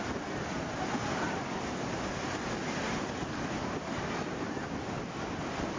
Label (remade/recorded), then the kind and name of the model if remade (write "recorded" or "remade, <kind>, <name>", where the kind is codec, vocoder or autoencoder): recorded